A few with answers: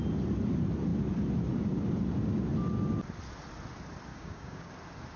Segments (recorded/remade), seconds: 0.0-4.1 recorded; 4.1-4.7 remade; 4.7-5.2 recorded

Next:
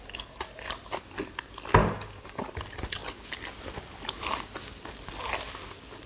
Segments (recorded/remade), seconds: 0.0-1.8 recorded; 1.8-2.4 remade; 2.4-6.1 recorded

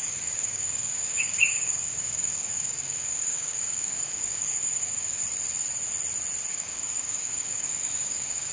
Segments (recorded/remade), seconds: 0.0-5.2 remade; 5.2-6.5 recorded; 6.5-8.5 remade

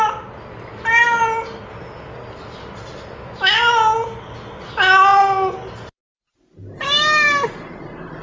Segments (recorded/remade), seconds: 0.0-8.2 recorded

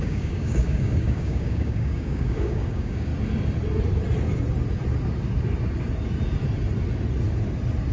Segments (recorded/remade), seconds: 0.0-3.1 remade; 3.1-7.9 recorded

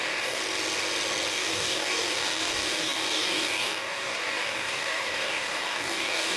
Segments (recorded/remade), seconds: 0.0-0.4 remade; 0.4-1.3 recorded; 1.3-6.4 remade